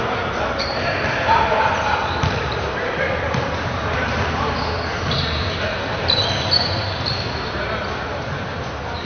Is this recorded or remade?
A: remade